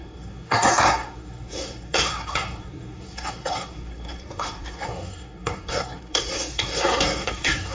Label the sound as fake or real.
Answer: fake